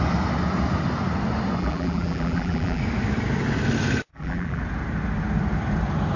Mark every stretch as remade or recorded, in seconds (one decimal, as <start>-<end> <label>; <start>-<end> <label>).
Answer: 0.0-1.6 recorded; 1.6-2.8 remade; 2.8-4.1 recorded; 4.1-4.6 remade; 4.6-6.2 recorded